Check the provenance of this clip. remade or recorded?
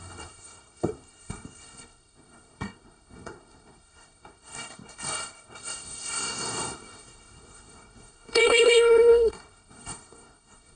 remade